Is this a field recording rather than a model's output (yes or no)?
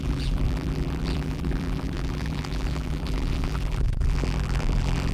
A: no